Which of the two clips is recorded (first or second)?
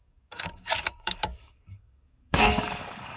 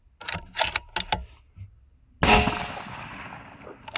second